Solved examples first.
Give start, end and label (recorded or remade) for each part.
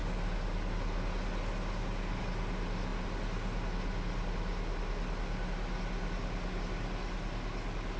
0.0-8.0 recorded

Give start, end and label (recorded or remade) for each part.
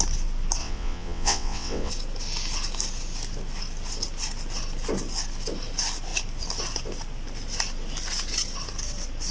0.0-0.6 recorded; 0.6-1.9 remade; 1.9-9.3 recorded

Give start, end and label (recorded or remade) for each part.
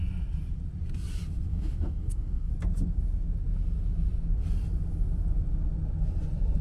0.0-1.5 recorded; 1.5-2.5 remade; 2.5-6.6 recorded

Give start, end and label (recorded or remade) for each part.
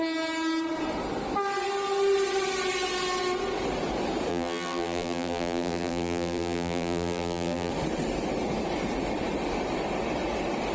0.0-4.3 recorded; 4.3-7.7 remade; 7.7-10.7 recorded